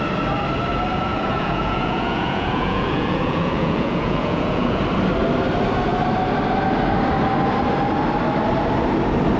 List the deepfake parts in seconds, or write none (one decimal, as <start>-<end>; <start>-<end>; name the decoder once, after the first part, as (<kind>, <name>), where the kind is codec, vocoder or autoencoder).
1.1-4.8 (vocoder, Vocos)